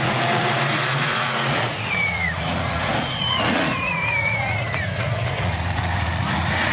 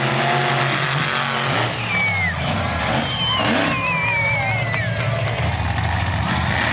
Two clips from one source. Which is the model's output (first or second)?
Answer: first